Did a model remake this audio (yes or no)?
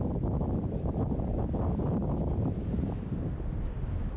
no